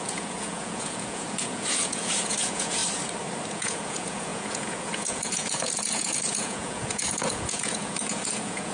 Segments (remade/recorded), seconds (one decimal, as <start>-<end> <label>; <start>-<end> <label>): 0.0-2.8 remade; 2.8-3.5 recorded; 3.5-8.7 remade